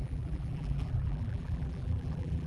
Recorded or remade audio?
remade